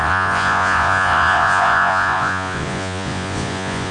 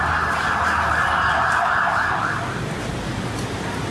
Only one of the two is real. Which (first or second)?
second